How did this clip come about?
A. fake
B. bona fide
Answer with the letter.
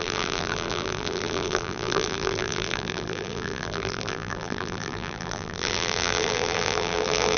A